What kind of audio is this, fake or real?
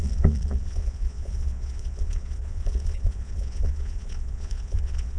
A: fake